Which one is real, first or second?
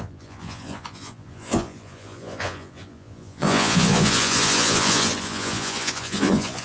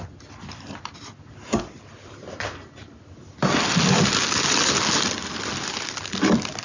second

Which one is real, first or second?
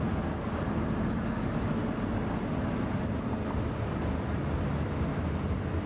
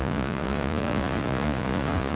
first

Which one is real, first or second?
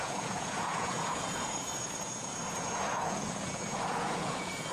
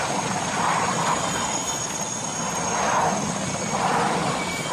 second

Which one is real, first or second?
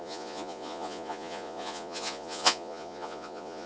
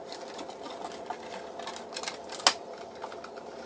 second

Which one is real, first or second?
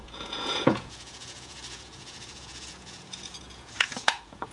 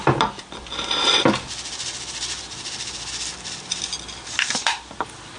second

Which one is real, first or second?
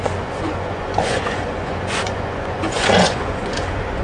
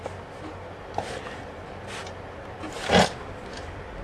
second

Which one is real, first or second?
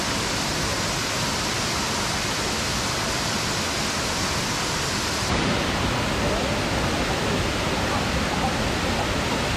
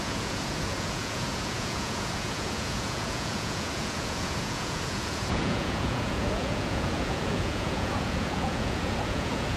first